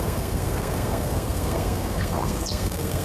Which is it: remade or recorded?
remade